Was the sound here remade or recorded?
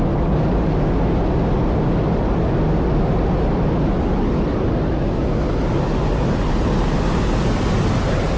recorded